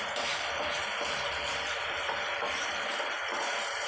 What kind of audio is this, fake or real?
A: fake